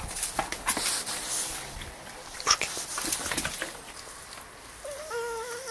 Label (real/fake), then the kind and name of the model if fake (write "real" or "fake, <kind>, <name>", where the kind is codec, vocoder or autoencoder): real